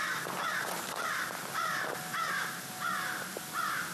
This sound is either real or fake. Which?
real